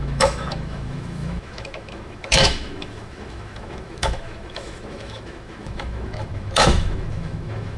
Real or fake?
fake